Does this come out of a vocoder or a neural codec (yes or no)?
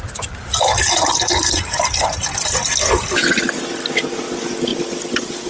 no